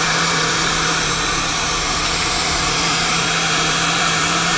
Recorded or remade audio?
remade